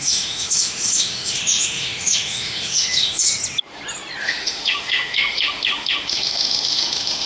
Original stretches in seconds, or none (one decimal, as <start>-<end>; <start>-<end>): 3.3-4.2